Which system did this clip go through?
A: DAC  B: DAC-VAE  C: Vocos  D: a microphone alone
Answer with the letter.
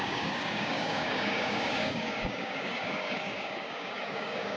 A